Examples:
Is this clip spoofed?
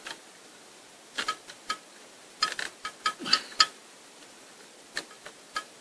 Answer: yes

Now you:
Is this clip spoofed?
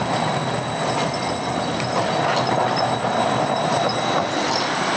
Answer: no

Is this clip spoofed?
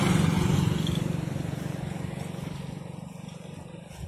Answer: no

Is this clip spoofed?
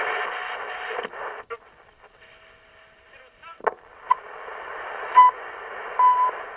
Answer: no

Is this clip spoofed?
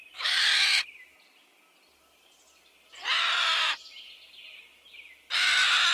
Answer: yes